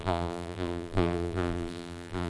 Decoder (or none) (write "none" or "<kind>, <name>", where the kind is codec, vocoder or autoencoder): vocoder, BigVGAN v2